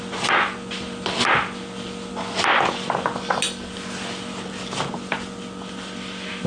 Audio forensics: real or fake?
real